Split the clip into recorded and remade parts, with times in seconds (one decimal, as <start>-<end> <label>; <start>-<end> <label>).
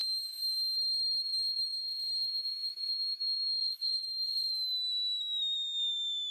0.0-3.6 recorded; 3.6-4.5 remade; 4.5-6.3 recorded